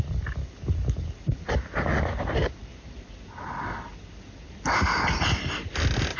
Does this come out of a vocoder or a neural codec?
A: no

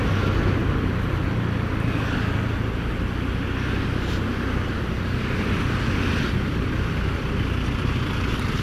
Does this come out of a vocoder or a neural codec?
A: no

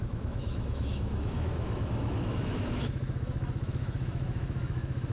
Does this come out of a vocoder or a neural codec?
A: yes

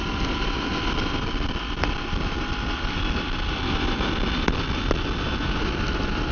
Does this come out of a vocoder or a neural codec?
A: no